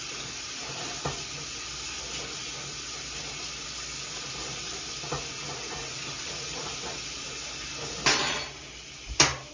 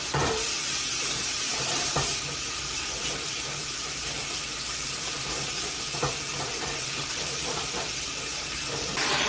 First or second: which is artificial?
second